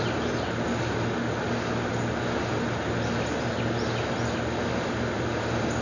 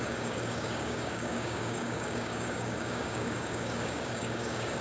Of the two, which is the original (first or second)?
first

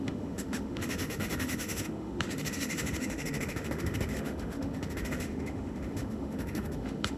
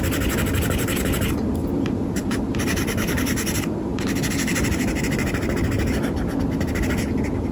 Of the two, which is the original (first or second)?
second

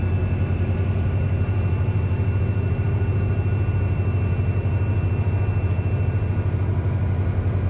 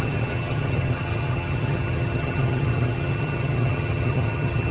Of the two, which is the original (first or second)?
first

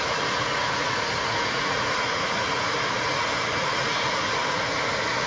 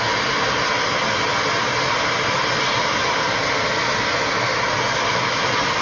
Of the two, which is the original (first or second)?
second